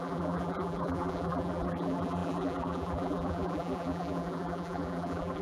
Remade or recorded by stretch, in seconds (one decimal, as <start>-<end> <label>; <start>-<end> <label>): 0.0-5.4 remade